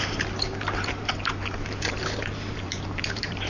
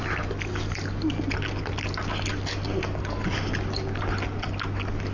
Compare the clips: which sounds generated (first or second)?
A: first